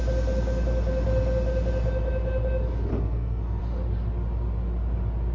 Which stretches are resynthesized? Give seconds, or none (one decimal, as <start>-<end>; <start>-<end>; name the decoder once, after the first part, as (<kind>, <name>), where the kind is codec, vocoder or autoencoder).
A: 2.9-3.6 (codec, SNAC)